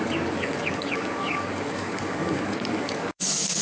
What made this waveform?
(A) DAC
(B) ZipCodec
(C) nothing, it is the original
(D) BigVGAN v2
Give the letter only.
A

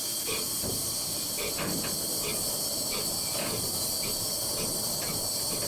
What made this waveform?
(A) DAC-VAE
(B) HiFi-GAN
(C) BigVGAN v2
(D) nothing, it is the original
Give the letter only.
D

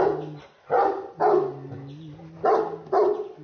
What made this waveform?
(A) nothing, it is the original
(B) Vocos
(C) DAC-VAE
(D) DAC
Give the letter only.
A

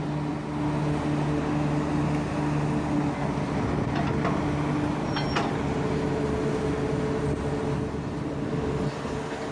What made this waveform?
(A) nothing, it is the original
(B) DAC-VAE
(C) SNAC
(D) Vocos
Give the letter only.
A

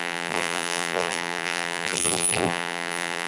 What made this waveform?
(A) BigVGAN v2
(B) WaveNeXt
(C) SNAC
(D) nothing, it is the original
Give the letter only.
A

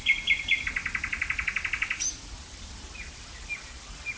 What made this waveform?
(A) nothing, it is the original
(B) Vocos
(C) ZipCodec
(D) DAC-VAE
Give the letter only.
A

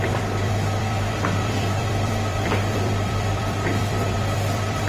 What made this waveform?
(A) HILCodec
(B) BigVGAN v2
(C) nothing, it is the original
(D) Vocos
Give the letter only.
B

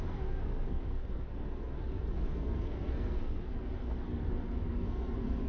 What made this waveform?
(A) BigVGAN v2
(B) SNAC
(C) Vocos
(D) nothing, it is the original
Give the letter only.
B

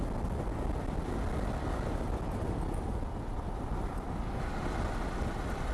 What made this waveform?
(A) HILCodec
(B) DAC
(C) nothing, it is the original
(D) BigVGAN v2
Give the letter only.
C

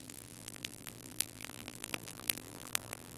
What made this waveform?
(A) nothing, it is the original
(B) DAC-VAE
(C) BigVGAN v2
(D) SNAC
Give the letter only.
C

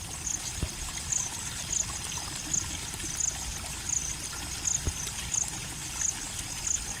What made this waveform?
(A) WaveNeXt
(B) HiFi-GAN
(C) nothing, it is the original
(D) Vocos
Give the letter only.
C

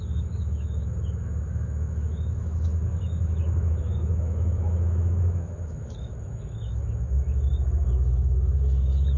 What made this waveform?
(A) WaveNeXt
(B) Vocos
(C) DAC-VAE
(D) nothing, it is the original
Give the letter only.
C